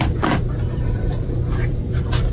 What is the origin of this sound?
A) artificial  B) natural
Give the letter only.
A